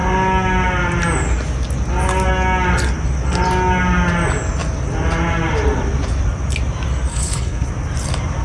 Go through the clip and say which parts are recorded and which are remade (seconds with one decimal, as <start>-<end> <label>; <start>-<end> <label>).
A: 0.0-7.1 recorded; 7.1-7.7 remade; 7.7-8.4 recorded